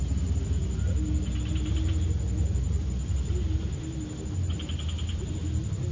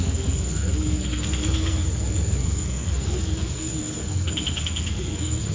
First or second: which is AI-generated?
second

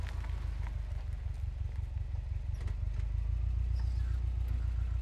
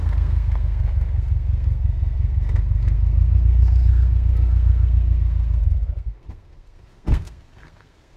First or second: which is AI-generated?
second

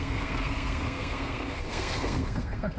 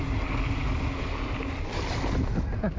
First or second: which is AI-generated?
first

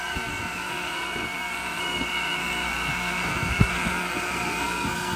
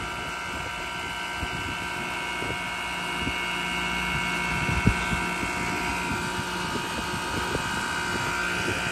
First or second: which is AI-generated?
first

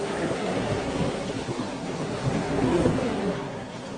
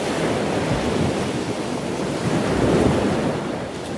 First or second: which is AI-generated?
first